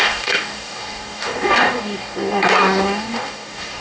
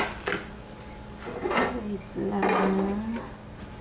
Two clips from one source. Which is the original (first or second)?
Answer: second